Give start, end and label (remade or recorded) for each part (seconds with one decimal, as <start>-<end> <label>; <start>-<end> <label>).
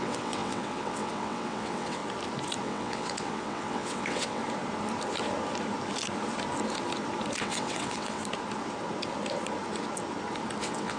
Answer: 0.0-2.0 remade; 2.0-2.6 recorded; 2.6-4.4 remade; 4.4-7.4 recorded; 7.4-8.2 remade; 8.2-10.6 recorded; 10.6-11.0 remade